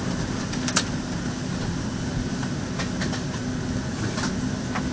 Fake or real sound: real